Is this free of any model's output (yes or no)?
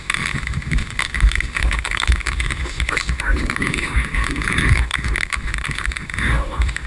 no